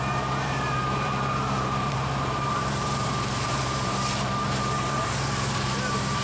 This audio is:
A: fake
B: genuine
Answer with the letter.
A